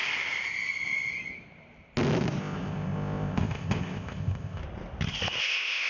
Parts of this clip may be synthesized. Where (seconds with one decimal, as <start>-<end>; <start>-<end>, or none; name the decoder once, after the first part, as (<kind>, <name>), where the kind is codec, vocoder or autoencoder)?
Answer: 2.4-4.6 (codec, ZipCodec); 5.4-5.9